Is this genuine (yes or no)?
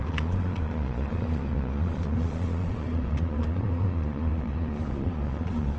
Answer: no